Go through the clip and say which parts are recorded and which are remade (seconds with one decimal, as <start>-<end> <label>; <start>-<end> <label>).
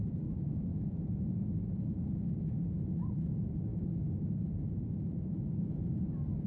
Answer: 0.0-0.7 recorded; 0.7-1.6 remade; 1.6-6.5 recorded